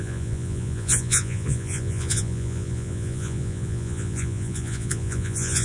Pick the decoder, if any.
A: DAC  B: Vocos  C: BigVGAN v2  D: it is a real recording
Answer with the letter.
B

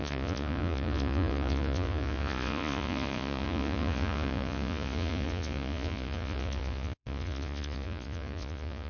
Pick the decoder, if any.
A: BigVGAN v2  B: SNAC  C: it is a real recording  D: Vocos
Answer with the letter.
D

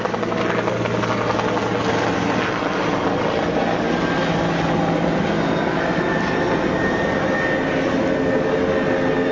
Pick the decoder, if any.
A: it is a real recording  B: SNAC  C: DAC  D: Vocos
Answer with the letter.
A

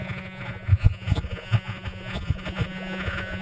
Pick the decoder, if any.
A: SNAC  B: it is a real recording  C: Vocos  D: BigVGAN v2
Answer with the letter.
C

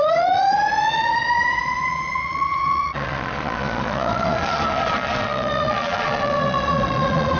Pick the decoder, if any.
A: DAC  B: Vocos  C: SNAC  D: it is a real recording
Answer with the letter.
B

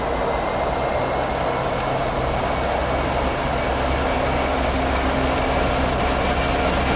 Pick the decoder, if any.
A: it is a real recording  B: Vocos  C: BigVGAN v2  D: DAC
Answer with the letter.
A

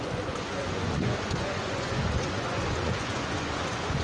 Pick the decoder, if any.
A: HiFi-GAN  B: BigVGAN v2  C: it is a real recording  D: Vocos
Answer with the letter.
D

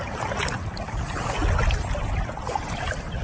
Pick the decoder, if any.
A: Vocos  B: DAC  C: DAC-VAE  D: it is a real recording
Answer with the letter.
D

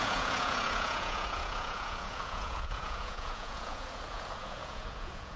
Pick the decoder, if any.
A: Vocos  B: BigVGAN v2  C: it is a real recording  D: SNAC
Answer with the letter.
A